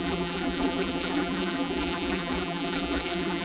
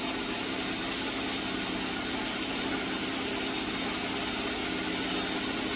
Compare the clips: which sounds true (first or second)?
second